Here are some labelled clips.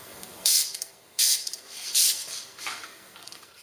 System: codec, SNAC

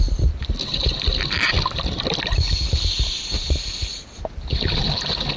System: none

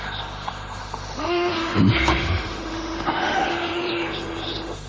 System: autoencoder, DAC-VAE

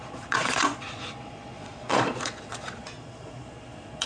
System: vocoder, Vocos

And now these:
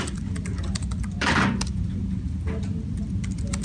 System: none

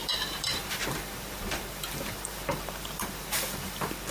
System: vocoder, BigVGAN v2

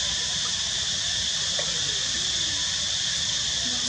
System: none